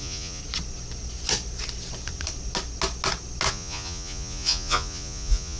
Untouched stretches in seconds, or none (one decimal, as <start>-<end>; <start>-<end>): 0.4-3.5